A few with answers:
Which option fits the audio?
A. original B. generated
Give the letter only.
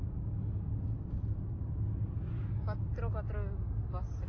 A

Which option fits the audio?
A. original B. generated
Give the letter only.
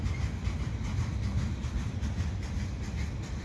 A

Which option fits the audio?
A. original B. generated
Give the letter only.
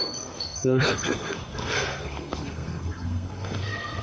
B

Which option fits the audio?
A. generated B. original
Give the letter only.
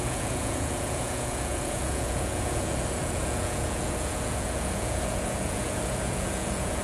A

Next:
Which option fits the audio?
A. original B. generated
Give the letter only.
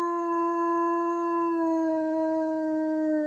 B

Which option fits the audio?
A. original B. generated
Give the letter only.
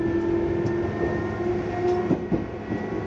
A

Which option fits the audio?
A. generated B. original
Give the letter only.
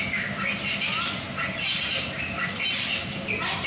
B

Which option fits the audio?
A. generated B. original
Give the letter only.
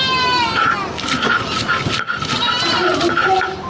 B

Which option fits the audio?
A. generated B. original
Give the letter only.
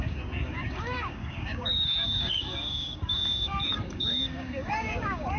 A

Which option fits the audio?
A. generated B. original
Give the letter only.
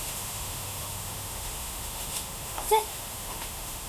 A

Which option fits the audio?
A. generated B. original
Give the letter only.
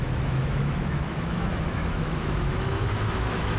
A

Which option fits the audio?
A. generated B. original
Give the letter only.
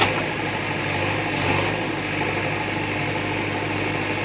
B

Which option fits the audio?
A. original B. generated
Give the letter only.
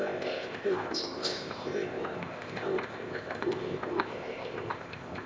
B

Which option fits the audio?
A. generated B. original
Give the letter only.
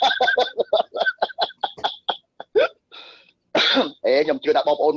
B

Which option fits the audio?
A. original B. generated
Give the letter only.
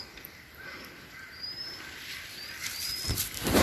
B